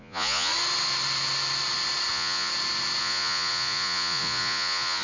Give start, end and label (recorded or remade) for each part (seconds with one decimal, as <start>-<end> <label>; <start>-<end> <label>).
0.0-0.5 remade; 0.5-2.1 recorded; 2.1-2.5 remade; 2.5-3.0 recorded; 3.0-5.0 remade